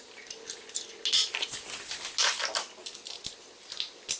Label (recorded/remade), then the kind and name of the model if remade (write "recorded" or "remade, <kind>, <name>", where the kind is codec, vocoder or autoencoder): recorded